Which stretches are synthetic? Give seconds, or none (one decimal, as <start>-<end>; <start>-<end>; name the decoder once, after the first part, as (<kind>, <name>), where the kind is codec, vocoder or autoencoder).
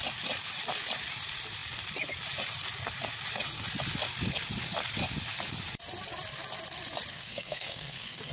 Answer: 7.1-8.3 (codec, SNAC)